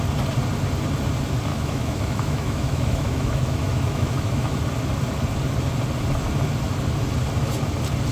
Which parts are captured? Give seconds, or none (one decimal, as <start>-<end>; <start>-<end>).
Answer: 0.0-1.5; 4.5-8.1